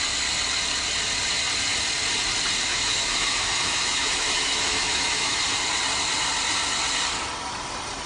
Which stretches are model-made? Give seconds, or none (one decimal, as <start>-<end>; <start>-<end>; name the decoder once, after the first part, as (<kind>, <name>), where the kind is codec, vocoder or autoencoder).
2.7-5.4 (autoencoder, DAC-VAE)